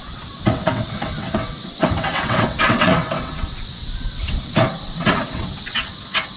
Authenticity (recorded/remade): remade